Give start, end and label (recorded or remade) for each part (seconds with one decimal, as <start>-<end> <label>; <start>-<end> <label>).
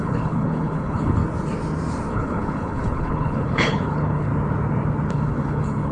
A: 0.0-1.2 remade; 1.2-2.1 recorded; 2.1-4.3 remade; 4.3-5.1 recorded; 5.1-5.9 remade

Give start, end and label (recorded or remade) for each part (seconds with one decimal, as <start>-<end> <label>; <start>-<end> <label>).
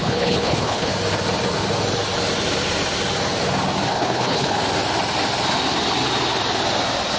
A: 0.0-0.9 remade; 0.9-3.9 recorded; 3.9-4.6 remade; 4.6-7.2 recorded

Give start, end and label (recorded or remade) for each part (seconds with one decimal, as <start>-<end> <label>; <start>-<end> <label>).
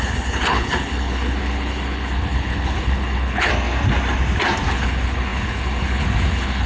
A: 0.0-3.5 remade; 3.5-4.7 recorded; 4.7-6.7 remade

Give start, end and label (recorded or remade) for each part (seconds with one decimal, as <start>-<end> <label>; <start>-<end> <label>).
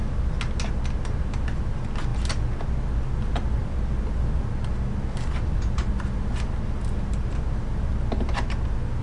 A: 0.0-9.0 recorded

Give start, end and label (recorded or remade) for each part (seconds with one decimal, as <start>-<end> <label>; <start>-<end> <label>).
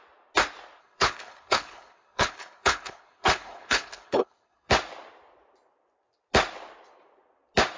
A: 0.0-0.8 recorded; 0.8-4.7 remade; 4.7-7.8 recorded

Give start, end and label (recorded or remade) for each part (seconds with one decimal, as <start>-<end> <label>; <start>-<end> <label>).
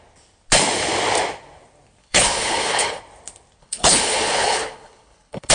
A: 0.0-2.0 recorded; 2.0-3.0 remade; 3.0-3.6 recorded; 3.6-5.5 remade